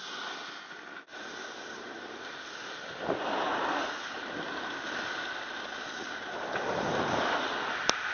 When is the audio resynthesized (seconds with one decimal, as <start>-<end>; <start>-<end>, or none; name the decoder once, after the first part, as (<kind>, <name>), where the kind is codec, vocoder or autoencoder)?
none